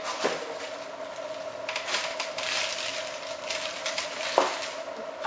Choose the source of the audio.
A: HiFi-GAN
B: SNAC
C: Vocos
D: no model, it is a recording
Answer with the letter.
D